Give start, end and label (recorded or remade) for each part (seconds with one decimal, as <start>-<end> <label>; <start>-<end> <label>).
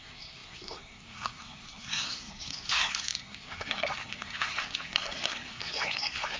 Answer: 0.0-6.4 remade